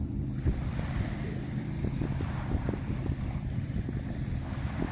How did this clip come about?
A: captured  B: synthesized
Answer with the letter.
B